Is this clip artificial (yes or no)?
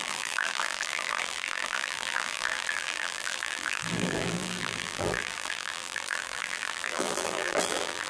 yes